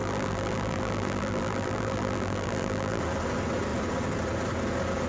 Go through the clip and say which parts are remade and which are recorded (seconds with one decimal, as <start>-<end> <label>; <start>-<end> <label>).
0.0-3.0 remade; 3.0-5.1 recorded